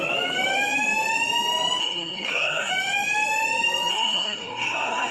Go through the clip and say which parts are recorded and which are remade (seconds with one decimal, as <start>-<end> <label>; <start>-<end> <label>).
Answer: 0.0-1.8 recorded; 1.8-2.7 remade; 2.7-3.9 recorded; 3.9-5.1 remade